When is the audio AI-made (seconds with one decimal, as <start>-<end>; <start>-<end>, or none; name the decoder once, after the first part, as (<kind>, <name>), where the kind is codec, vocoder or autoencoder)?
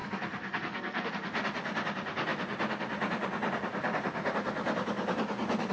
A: 0.0-1.1 (codec, SNAC)